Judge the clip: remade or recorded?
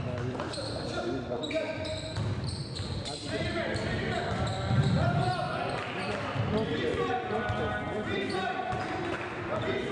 remade